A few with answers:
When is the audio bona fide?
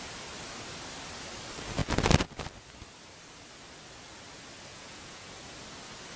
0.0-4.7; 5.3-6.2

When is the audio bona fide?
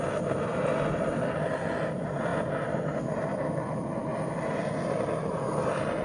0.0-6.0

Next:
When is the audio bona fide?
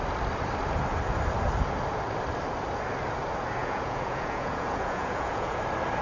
0.0-3.6; 5.6-6.0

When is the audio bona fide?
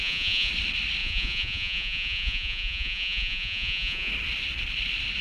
0.5-1.0; 4.1-5.2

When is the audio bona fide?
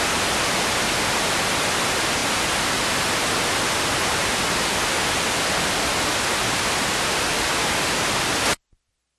0.0-9.2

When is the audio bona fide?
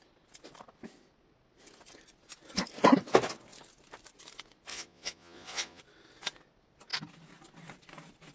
0.0-4.7; 5.8-8.3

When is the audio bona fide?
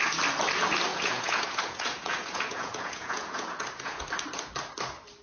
0.0-0.9; 4.0-5.2